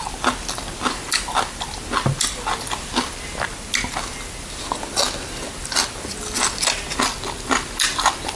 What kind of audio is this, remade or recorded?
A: recorded